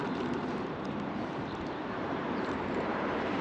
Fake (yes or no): yes